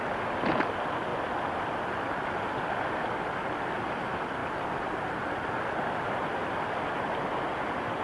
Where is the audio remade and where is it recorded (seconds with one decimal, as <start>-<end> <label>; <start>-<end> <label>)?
0.0-8.0 recorded